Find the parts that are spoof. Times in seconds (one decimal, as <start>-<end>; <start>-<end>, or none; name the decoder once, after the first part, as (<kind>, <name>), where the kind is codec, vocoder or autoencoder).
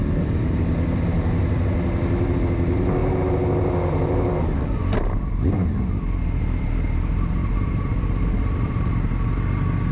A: 7.4-9.1 (vocoder, BigVGAN v2)